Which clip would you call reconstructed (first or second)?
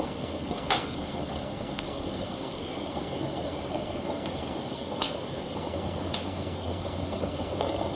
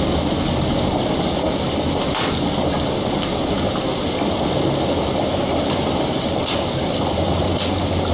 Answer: first